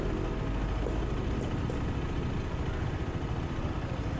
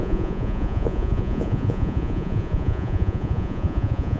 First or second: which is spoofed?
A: second